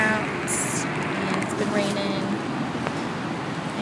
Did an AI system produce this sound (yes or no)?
no